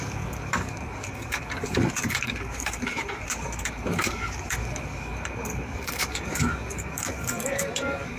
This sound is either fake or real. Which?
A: fake